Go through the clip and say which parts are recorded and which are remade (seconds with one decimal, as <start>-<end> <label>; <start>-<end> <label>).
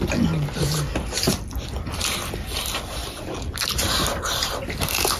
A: 0.0-5.2 recorded